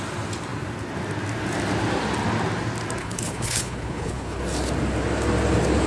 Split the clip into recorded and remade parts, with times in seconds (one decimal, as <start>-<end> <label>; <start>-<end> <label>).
0.0-3.0 recorded; 3.0-4.4 remade; 4.4-5.9 recorded